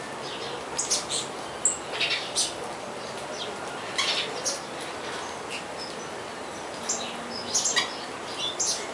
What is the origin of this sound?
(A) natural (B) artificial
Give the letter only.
A